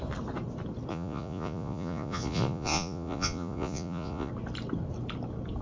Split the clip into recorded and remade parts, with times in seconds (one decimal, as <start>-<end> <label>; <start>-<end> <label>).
0.0-0.9 recorded; 0.9-4.3 remade; 4.3-5.6 recorded